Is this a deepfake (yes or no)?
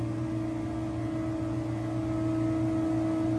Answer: no